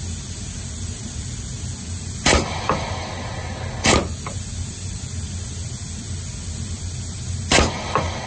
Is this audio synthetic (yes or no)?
no